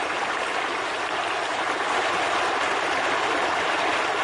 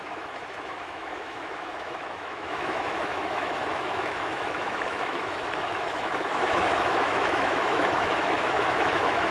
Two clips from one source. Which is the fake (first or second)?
second